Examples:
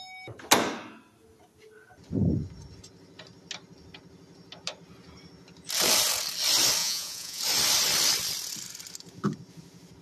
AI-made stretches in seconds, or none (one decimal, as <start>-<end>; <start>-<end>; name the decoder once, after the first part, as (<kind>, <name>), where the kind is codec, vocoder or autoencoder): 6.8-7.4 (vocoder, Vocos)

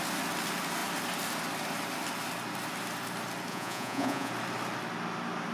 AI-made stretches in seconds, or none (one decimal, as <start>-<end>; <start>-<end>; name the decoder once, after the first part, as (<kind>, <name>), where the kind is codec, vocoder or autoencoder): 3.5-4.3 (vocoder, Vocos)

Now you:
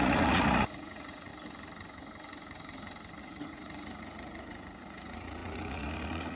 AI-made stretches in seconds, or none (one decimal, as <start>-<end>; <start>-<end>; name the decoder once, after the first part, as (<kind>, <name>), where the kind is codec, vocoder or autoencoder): 0.0-1.3 (vocoder, Vocos); 3.2-6.4

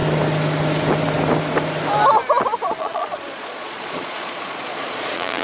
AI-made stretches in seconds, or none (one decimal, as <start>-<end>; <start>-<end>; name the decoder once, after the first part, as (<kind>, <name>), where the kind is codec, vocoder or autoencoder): 2.8-5.4 (vocoder, Vocos)

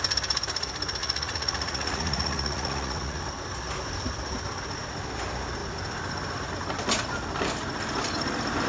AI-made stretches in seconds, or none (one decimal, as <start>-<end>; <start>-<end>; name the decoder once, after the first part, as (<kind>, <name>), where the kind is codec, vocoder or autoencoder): 1.0-3.2 (vocoder, Vocos)

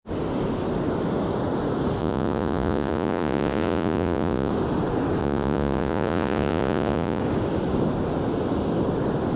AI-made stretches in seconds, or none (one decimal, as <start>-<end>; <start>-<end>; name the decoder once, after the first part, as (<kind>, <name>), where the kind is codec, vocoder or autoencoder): 2.0-4.5 (vocoder, Vocos); 5.2-7.2

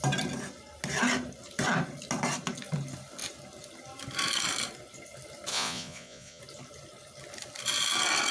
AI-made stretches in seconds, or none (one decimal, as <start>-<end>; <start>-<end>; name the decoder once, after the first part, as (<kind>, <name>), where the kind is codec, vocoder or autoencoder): 5.5-6.4 (vocoder, Vocos)